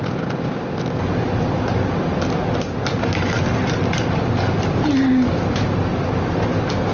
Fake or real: real